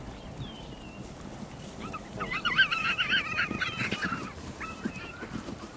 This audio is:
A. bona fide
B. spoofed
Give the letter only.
B